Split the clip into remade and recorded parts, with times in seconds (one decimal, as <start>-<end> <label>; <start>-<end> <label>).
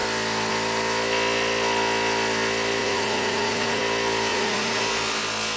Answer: 0.0-2.8 recorded; 2.8-3.8 remade; 3.8-4.3 recorded; 4.3-4.8 remade; 4.8-5.6 recorded